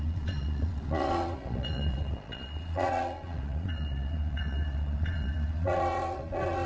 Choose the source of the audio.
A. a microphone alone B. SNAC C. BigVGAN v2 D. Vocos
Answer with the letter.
D